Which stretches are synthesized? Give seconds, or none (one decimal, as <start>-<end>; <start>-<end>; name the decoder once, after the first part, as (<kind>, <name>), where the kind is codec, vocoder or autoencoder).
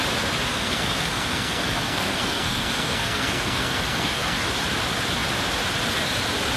0.5-4.5 (codec, SNAC)